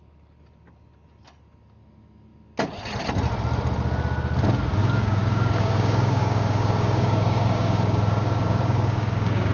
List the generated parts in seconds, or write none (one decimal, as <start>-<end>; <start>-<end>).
4.8-9.5